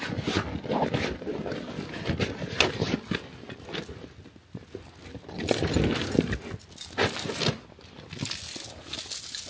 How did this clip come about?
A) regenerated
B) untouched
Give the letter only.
B